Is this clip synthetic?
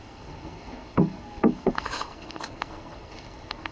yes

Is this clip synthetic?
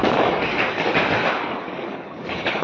yes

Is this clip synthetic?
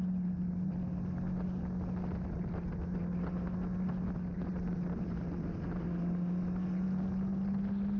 no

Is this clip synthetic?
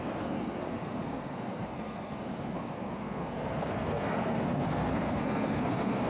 yes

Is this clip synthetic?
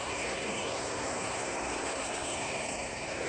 yes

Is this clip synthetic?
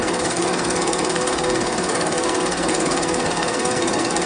yes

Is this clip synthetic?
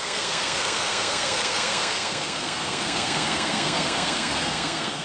yes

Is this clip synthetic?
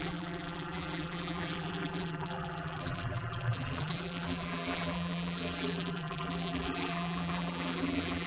yes